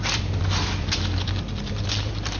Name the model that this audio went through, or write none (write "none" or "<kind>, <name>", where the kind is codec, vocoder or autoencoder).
vocoder, BigVGAN v2